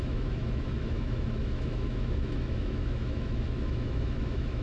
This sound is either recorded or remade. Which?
remade